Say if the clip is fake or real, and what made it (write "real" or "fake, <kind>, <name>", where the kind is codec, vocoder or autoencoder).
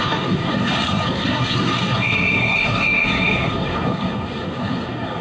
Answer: fake, codec, SNAC